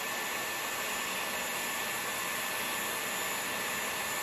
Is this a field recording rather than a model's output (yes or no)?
yes